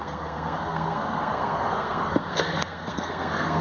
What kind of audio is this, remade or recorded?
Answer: remade